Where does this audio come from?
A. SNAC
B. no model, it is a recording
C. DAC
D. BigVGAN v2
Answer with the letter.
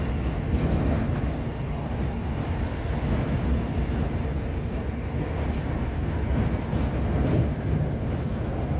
B